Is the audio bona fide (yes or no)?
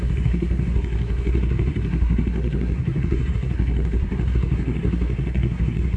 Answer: no